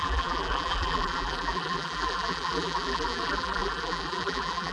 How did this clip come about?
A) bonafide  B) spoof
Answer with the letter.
B